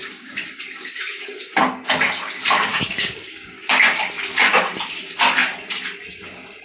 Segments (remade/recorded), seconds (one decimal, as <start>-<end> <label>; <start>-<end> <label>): 0.0-1.6 remade; 1.6-2.7 recorded; 2.7-4.0 remade; 4.0-6.6 recorded

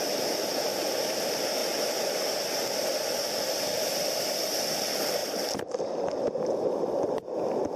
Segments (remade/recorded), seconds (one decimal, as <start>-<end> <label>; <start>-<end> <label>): 0.0-7.8 recorded

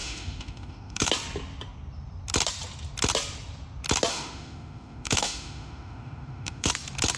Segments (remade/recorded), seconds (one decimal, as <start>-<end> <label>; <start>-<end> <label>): 0.0-1.1 remade; 1.1-4.1 recorded; 4.1-6.7 remade; 6.7-7.2 recorded

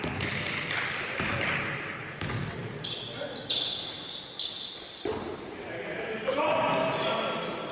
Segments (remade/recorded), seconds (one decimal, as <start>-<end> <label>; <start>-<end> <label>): 0.0-7.7 recorded